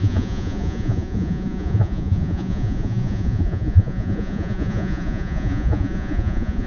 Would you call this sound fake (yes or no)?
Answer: yes